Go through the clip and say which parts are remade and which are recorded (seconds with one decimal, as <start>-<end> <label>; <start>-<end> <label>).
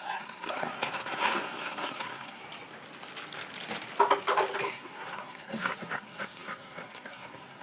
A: 0.0-2.4 remade; 2.4-4.7 recorded; 4.7-7.6 remade